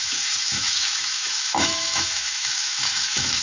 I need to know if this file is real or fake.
fake